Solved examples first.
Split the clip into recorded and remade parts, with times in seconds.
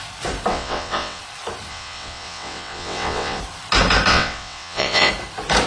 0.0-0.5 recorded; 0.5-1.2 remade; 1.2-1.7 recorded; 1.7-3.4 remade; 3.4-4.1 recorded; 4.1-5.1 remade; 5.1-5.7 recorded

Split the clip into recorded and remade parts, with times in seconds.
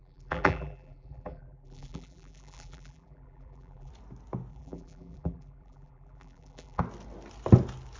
0.0-3.9 remade; 3.9-4.5 recorded; 4.5-6.8 remade; 6.8-8.0 recorded